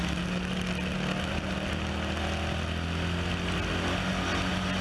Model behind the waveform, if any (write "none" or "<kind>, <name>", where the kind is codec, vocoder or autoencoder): none